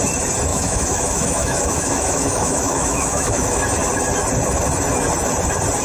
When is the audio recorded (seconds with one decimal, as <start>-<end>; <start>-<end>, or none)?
0.0-0.5; 3.6-5.8